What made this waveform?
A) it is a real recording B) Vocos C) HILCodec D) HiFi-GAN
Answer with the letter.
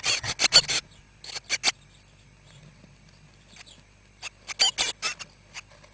A